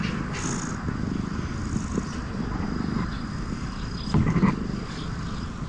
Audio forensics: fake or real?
real